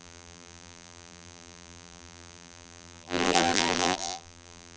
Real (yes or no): no